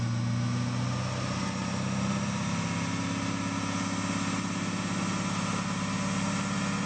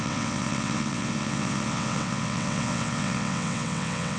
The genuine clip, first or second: first